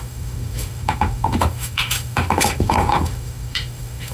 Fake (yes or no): yes